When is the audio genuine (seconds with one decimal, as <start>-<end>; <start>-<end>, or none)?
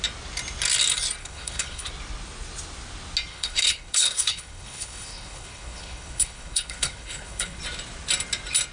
0.0-1.2; 1.9-3.3; 7.6-8.7